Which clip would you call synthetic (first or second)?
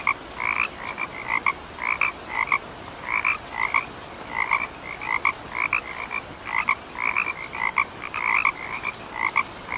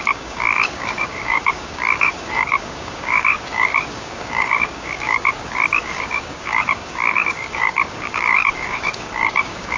second